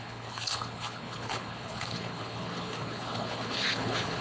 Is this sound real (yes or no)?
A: no